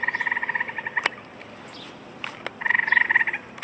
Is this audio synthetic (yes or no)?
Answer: no